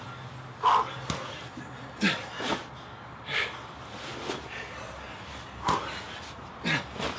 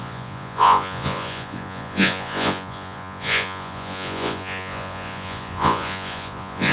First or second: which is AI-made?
second